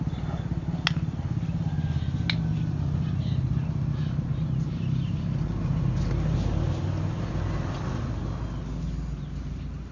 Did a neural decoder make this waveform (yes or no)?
no